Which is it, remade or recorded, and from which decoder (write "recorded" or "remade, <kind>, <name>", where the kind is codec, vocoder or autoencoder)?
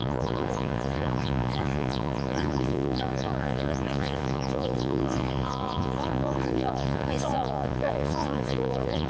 remade, vocoder, Vocos